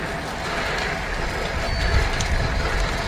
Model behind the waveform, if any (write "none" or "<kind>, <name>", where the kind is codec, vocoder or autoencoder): none